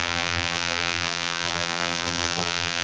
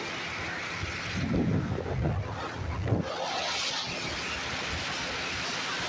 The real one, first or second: second